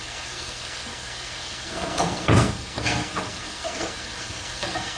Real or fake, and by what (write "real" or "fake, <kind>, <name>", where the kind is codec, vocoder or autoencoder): fake, codec, SNAC